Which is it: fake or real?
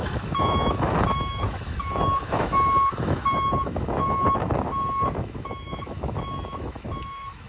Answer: fake